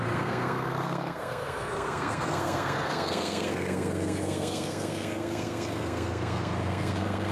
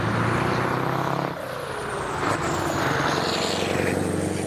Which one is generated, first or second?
first